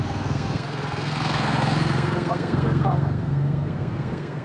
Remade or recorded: remade